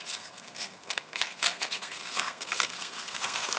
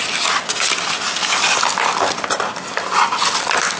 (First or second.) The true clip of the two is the second